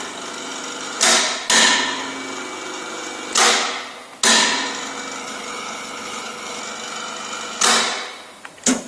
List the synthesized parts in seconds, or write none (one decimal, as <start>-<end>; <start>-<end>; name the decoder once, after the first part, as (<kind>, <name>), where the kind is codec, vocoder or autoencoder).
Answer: 5.2-6.6 (codec, HILCodec)